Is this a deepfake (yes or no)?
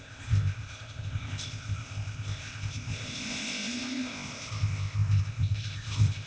yes